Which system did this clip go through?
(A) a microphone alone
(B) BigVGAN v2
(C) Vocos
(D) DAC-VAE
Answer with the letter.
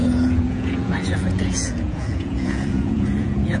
C